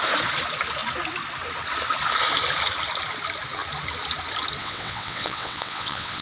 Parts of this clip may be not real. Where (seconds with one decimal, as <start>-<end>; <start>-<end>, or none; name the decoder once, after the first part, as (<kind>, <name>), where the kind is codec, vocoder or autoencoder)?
4.6-6.2 (vocoder, WaveNeXt)